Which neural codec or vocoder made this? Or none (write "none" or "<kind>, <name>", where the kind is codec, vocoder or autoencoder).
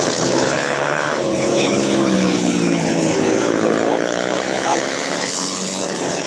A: codec, HILCodec